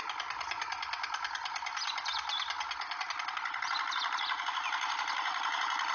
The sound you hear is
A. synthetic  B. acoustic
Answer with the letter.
B